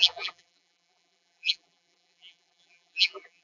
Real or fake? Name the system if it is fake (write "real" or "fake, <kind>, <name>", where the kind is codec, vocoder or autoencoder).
fake, vocoder, BigVGAN v2